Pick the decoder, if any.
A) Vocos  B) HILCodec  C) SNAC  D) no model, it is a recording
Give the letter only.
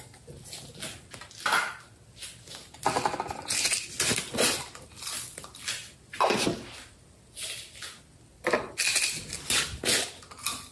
D